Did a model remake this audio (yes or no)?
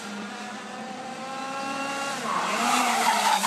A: yes